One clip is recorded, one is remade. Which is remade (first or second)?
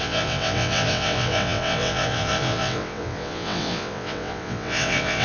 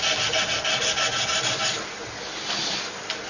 first